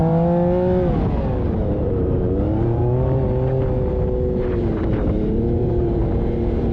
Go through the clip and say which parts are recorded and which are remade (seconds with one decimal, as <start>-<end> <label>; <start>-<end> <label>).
0.0-1.6 recorded; 1.6-2.8 remade; 2.8-4.4 recorded; 4.4-6.7 remade